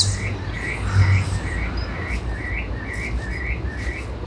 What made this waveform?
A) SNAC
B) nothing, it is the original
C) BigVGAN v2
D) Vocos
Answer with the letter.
B